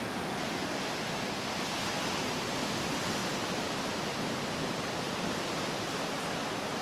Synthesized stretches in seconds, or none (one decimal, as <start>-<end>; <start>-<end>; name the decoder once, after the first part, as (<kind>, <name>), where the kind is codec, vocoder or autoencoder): 3.2-5.9 (vocoder, BigVGAN v2)